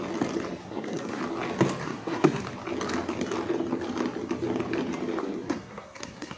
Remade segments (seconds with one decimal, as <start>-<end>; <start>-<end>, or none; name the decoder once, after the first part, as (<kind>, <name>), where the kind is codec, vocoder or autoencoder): 0.6-1.2 (codec, SNAC); 1.8-2.4; 5.2-6.4